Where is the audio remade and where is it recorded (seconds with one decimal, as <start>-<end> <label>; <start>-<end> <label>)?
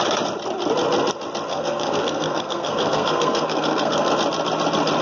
0.0-1.5 recorded; 1.5-4.1 remade; 4.1-5.0 recorded